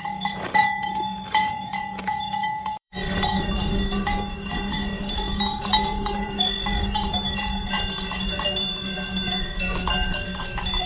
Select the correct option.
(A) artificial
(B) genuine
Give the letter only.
A